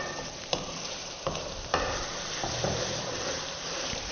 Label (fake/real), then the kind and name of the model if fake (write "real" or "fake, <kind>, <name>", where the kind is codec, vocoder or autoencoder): fake, vocoder, BigVGAN v2